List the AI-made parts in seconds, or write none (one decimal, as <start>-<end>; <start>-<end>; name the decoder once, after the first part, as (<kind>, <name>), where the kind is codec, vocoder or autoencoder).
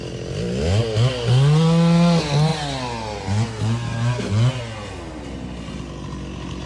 none